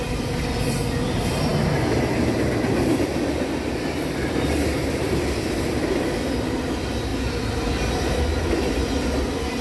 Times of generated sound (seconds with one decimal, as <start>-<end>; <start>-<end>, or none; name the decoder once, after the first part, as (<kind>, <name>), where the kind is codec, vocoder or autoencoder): none